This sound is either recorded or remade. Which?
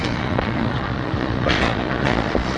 remade